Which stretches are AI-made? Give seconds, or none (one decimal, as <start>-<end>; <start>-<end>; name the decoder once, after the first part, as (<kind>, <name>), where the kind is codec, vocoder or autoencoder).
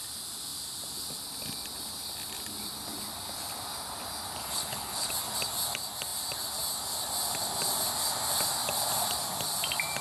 4.4-5.1 (codec, HILCodec)